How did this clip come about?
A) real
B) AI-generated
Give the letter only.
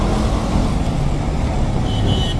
A